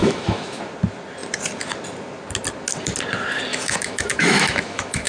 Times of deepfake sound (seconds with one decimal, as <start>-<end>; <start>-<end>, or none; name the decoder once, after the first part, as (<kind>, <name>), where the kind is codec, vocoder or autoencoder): 0.0-0.6 (autoencoder, DAC-VAE); 3.5-5.1